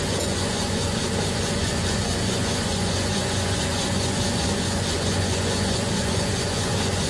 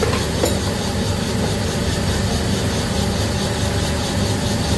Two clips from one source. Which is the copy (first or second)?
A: first